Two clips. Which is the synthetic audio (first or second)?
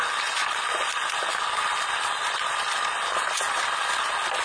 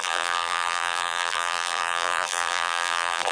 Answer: second